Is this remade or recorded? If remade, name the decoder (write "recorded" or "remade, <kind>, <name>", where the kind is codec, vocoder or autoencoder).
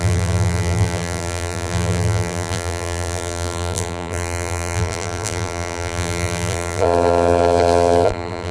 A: remade, vocoder, BigVGAN v2